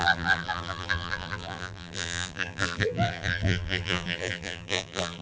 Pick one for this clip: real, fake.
fake